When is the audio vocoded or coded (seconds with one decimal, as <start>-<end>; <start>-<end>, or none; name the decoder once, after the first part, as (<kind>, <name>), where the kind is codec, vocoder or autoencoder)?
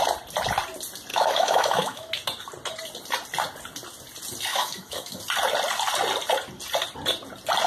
1.1-2.1 (autoencoder, DAC-VAE); 4.5-5.2